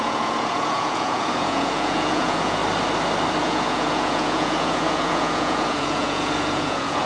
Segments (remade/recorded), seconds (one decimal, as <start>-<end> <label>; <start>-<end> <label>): 0.0-2.6 remade; 2.6-3.4 recorded; 3.4-7.1 remade